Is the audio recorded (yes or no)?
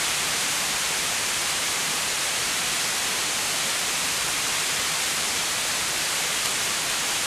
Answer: no